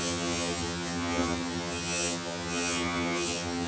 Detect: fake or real fake